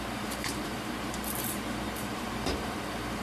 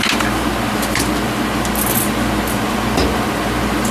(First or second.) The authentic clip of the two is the second